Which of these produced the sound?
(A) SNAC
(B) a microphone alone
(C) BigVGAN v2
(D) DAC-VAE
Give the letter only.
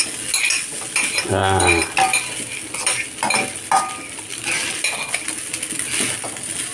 B